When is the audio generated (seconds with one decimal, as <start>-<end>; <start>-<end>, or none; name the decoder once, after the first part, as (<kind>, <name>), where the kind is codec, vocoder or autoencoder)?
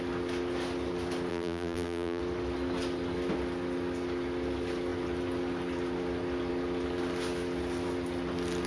1.3-2.2 (vocoder, BigVGAN v2)